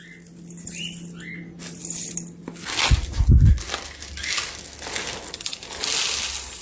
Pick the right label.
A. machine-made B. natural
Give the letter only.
B